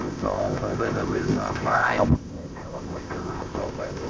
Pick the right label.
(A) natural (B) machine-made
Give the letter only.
B